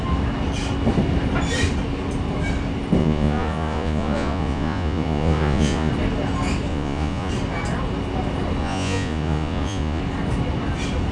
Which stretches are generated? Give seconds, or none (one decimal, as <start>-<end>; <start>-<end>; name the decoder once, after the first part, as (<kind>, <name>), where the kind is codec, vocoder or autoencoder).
3.0-5.9 (vocoder, Vocos); 6.7-7.3; 8.6-10.0